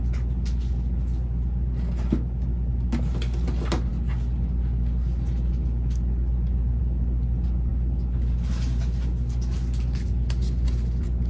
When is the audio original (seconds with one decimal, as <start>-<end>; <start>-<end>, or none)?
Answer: 0.0-11.3